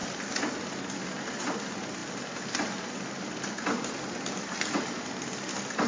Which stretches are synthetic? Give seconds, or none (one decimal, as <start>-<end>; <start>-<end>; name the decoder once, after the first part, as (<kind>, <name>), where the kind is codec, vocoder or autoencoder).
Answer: none

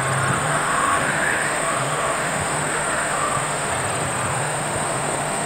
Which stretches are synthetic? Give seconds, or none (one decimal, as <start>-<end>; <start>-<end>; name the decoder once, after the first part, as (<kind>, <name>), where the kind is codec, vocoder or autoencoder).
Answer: 0.4-3.7 (autoencoder, DAC-VAE); 4.3-5.5

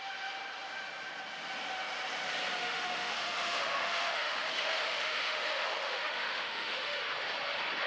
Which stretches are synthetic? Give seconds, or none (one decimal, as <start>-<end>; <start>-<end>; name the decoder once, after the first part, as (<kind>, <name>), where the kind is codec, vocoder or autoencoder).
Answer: 2.6-7.0 (autoencoder, DAC-VAE)

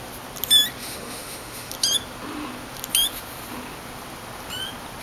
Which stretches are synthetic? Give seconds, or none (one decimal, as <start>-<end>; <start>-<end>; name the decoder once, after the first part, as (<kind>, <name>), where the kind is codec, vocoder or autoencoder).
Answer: 0.8-1.7 (autoencoder, DAC-VAE)

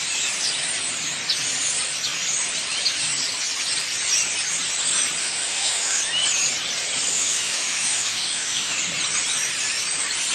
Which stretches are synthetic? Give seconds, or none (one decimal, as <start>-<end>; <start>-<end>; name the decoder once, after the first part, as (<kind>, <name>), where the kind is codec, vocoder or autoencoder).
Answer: 5.2-6.0 (autoencoder, DAC-VAE); 7.1-8.8

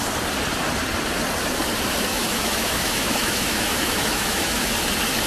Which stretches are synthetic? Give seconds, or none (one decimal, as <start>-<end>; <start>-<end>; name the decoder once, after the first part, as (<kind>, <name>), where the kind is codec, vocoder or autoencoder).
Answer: 2.1-4.7 (autoencoder, DAC-VAE)

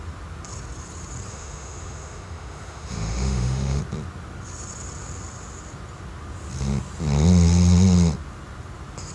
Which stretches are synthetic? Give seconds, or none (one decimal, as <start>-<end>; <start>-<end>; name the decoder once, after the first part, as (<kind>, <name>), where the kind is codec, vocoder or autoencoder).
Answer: 1.3-3.8 (autoencoder, DAC-VAE)